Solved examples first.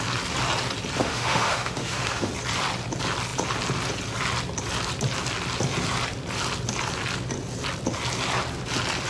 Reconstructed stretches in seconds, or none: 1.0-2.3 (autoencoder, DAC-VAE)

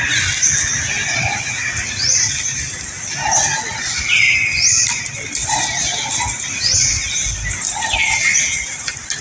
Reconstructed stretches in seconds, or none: none

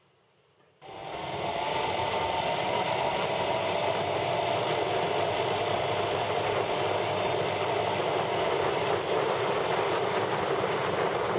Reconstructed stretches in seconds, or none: none

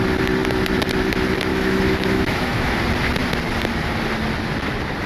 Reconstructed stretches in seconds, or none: 1.5-2.7 (autoencoder, DAC-VAE)

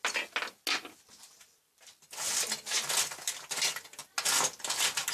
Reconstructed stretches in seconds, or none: none

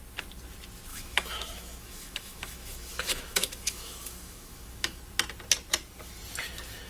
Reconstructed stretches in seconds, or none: 0.9-5.0 (autoencoder, DAC-VAE)